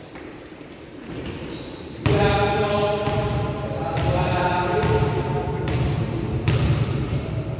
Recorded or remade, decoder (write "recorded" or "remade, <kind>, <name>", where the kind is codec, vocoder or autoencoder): remade, vocoder, BigVGAN v2